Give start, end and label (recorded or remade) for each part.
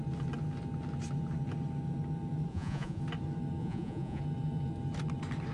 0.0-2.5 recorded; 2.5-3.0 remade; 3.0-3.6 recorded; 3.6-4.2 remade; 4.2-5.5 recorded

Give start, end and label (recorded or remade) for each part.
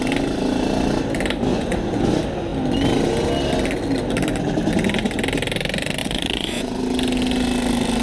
0.0-1.5 recorded; 1.5-2.1 remade; 2.1-6.0 recorded; 6.0-6.8 remade; 6.8-8.0 recorded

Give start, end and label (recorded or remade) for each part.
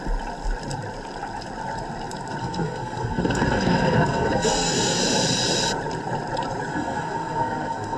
0.0-2.4 recorded; 2.4-5.0 remade; 5.0-6.7 recorded; 6.7-8.0 remade